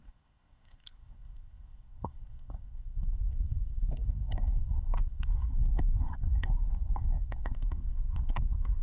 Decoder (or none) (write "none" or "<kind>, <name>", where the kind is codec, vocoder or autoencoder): codec, SNAC